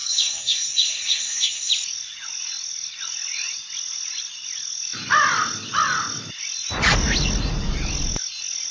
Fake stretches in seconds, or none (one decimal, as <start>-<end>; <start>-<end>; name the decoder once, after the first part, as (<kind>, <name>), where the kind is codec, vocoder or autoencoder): 0.0-1.7 (codec, SNAC)